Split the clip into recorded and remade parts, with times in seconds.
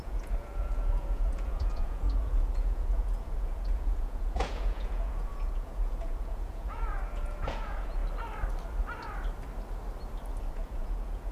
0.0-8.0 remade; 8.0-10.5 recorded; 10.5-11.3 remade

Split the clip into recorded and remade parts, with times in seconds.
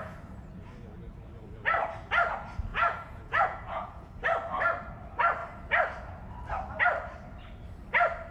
0.0-2.7 recorded; 2.7-4.2 remade; 4.2-8.3 recorded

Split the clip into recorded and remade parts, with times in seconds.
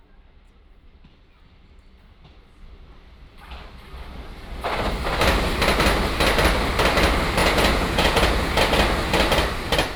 0.0-7.4 recorded; 7.4-8.6 remade; 8.6-10.0 recorded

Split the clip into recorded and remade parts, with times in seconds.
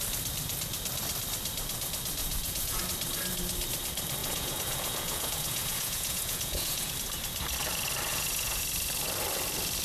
0.0-2.2 recorded; 2.2-2.8 remade; 2.8-4.2 recorded; 4.2-6.9 remade; 6.9-8.1 recorded; 8.1-8.6 remade; 8.6-9.8 recorded